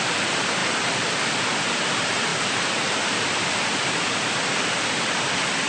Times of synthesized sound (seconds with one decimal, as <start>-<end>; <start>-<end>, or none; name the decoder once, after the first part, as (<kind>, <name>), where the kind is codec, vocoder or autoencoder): 0.0-0.6 (vocoder, BigVGAN v2); 1.7-2.3